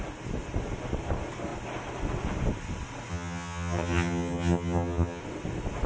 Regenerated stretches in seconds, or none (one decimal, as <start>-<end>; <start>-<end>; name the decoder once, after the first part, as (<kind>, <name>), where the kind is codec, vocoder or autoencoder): 3.1-5.2 (vocoder, HiFi-GAN)